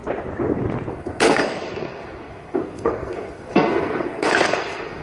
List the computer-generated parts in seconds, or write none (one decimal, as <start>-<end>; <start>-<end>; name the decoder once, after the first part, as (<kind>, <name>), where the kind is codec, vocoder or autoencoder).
0.9-5.0 (codec, SNAC)